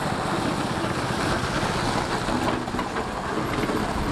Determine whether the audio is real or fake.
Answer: real